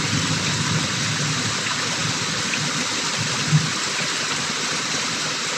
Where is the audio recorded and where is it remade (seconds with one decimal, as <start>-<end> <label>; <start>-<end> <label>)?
0.0-5.6 recorded